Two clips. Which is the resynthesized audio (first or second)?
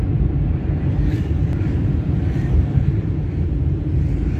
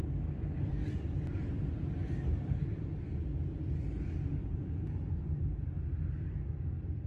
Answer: first